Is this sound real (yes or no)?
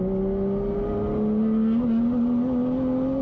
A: yes